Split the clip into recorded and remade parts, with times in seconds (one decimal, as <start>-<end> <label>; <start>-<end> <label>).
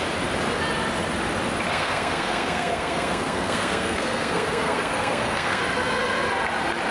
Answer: 0.0-1.7 recorded; 1.7-5.6 remade; 5.6-6.9 recorded